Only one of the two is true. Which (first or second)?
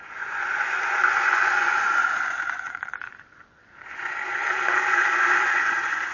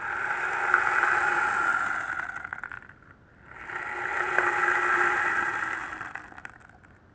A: second